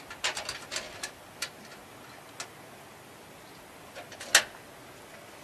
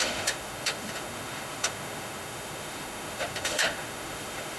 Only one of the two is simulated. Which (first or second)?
second